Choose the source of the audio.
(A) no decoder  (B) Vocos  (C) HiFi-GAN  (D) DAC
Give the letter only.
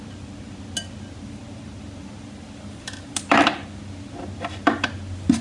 A